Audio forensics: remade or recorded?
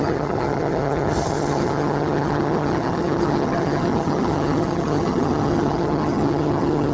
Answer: remade